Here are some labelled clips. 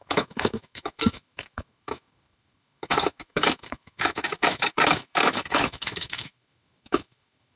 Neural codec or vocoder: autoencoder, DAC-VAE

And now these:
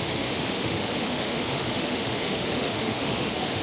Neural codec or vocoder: autoencoder, DAC-VAE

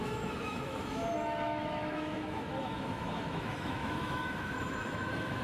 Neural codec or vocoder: autoencoder, DAC-VAE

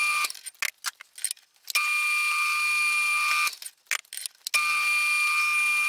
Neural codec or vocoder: none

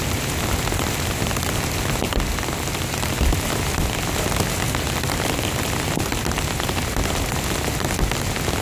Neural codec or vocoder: none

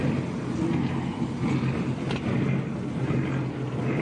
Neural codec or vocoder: none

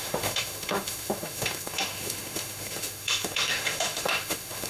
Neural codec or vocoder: autoencoder, DAC-VAE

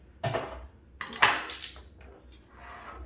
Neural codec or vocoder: none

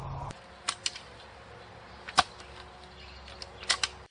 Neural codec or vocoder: none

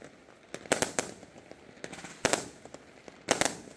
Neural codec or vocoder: none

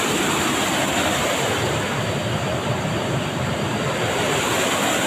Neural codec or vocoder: none